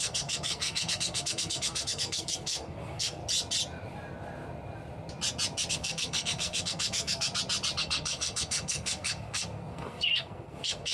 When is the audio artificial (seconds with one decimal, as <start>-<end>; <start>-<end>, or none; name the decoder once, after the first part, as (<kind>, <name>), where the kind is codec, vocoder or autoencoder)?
0.0-3.2 (codec, SNAC); 5.7-7.3; 7.8-10.9